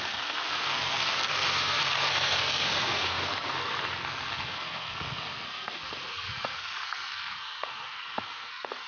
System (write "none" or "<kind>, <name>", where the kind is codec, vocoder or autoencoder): codec, SNAC